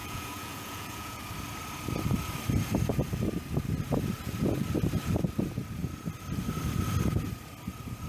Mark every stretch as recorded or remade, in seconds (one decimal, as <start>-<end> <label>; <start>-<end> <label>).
0.0-1.2 remade; 1.2-8.1 recorded